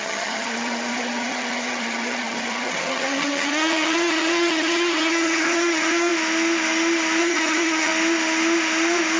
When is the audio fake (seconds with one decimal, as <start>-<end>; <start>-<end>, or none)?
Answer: 0.0-6.1; 7.2-7.9